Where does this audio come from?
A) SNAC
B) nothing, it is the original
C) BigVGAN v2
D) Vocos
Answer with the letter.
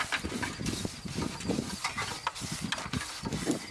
B